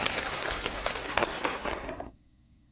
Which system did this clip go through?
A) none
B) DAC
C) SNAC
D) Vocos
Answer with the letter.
C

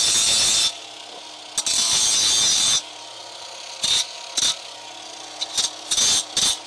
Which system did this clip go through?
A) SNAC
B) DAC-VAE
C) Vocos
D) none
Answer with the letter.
D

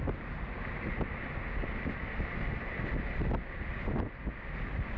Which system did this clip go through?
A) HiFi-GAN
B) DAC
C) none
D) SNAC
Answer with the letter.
C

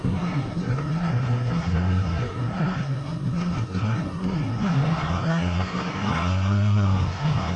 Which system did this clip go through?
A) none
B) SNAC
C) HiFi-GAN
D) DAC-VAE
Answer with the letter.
B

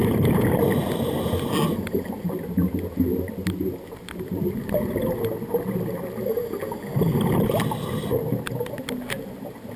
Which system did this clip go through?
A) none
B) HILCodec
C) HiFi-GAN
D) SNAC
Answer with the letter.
A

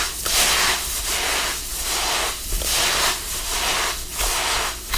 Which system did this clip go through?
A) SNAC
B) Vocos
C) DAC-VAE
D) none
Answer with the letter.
D